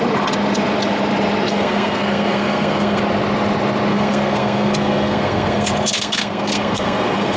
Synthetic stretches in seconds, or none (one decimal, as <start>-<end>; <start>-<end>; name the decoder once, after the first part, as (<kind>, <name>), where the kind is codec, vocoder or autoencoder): 1.5-3.0 (codec, SNAC); 3.9-7.4